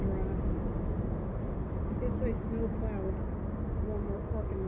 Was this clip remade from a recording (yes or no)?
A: no